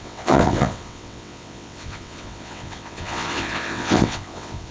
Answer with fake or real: fake